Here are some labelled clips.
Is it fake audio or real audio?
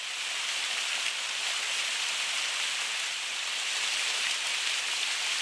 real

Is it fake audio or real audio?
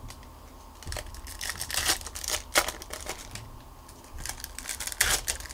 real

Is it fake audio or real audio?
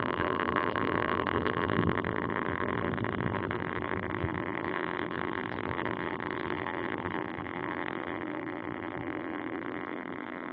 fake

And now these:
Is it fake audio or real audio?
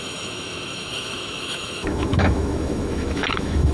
fake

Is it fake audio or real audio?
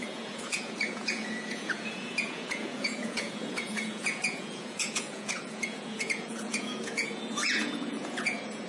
fake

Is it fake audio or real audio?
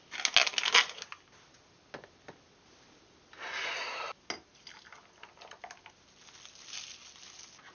real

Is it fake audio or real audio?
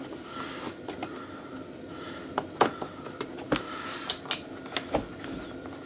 real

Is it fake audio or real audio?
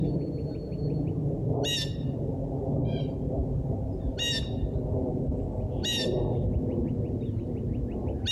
real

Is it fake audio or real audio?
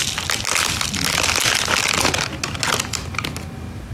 real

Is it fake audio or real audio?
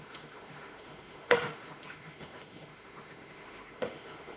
fake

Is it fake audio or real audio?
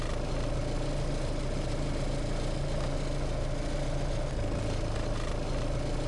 real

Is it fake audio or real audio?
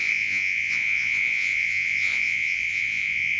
fake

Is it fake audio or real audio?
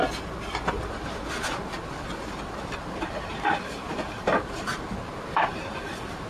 real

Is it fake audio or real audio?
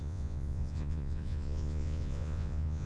fake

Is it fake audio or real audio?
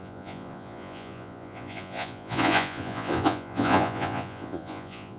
fake